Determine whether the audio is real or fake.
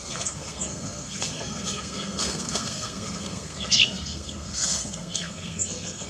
fake